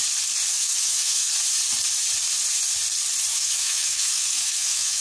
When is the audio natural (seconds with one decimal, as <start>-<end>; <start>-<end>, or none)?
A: 0.0-0.5; 1.3-3.3